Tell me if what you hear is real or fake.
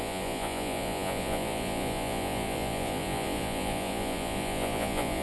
fake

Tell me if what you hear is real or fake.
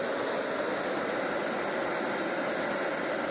real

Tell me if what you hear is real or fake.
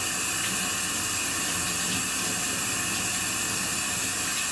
real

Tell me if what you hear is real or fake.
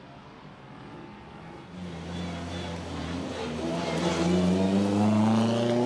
real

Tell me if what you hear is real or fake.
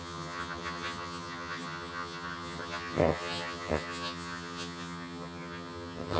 fake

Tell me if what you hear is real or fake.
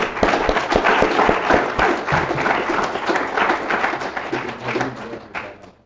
real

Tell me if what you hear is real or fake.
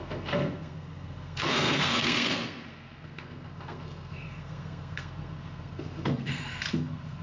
fake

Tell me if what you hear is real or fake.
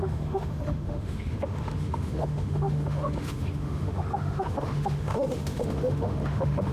fake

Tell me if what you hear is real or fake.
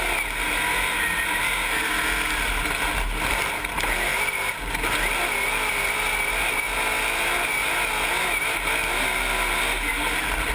real